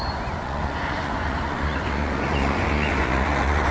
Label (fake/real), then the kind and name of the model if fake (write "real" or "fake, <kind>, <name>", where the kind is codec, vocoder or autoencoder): fake, vocoder, Vocos